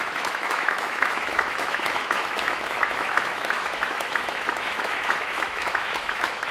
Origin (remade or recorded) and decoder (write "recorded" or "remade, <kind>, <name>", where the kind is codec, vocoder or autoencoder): remade, autoencoder, DAC-VAE